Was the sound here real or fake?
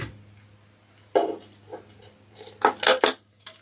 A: real